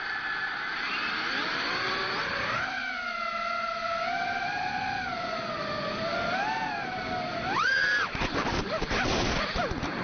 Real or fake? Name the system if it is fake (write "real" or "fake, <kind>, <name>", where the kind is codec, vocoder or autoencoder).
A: fake, vocoder, BigVGAN v2